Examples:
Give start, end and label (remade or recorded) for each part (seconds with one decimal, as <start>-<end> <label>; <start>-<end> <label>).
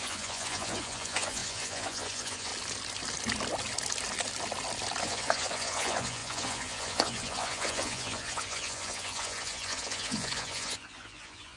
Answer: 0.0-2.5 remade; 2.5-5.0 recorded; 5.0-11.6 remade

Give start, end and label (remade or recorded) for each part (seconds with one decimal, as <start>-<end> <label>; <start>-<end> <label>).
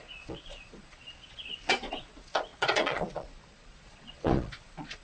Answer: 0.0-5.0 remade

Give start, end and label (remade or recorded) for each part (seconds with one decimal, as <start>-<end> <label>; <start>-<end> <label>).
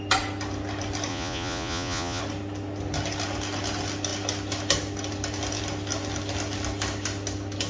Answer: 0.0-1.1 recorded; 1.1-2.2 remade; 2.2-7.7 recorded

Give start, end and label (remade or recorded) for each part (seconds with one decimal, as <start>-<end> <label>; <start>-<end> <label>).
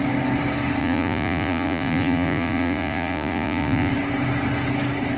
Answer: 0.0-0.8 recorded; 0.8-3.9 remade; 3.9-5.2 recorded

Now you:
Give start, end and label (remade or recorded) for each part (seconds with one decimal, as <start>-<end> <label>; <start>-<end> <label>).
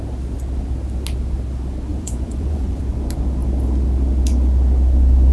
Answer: 0.0-1.9 recorded; 1.9-2.8 remade; 2.8-5.3 recorded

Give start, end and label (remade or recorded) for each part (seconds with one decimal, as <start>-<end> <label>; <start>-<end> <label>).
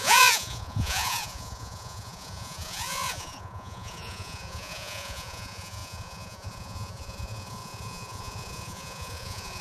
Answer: 0.0-9.6 remade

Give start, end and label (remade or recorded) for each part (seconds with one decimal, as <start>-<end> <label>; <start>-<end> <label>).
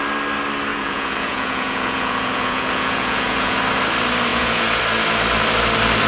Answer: 0.0-0.7 recorded; 0.7-3.6 remade; 3.6-4.3 recorded; 4.3-4.8 remade; 4.8-6.1 recorded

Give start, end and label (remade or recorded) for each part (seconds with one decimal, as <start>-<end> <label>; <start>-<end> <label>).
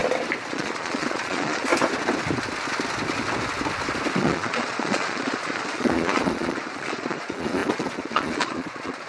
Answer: 0.0-0.5 recorded; 0.5-1.7 remade; 1.7-4.2 recorded; 4.2-9.1 remade